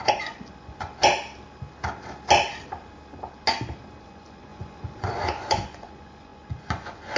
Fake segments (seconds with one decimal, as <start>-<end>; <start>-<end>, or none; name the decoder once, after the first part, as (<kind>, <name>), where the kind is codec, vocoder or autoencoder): 0.0-0.9 (vocoder, Vocos); 4.0-7.2